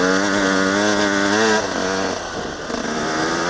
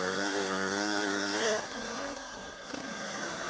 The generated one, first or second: second